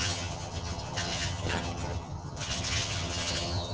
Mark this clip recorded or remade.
remade